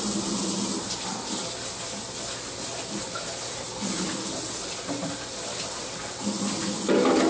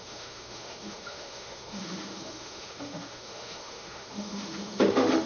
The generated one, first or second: second